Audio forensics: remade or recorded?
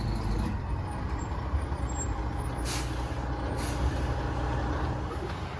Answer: recorded